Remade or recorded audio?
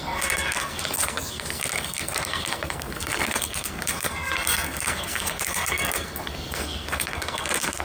remade